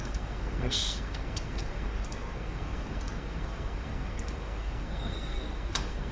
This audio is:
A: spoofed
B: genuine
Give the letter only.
A